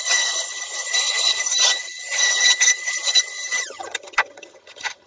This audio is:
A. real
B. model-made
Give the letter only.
B